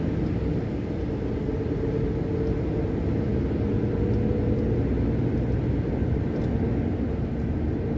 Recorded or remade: recorded